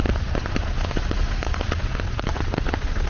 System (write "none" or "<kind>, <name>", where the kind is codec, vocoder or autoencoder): vocoder, Vocos